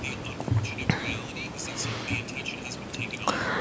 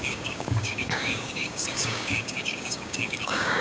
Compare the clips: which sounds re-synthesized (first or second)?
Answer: second